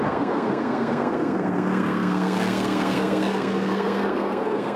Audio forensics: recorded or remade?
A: remade